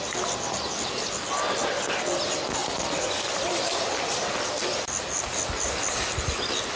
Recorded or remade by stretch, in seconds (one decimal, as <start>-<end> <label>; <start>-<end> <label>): 0.0-2.6 recorded; 2.6-4.1 remade; 4.1-6.8 recorded